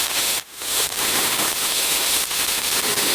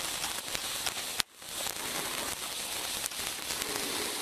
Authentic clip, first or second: second